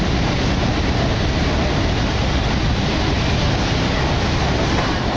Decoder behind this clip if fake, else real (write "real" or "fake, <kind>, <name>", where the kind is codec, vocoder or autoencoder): real